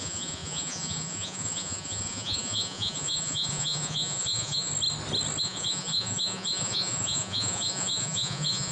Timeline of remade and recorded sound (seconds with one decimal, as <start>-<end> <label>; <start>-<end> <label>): 0.0-4.7 remade; 4.7-5.4 recorded; 5.4-8.7 remade